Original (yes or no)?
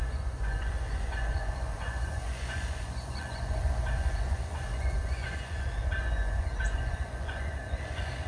no